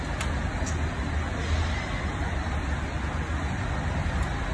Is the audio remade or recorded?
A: recorded